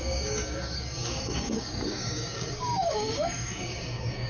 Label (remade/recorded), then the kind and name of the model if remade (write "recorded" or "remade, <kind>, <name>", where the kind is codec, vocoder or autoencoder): remade, codec, DAC